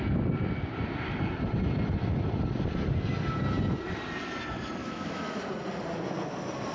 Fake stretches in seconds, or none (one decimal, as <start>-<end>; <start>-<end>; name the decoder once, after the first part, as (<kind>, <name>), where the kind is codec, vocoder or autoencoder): 4.8-5.4 (autoencoder, DAC-VAE)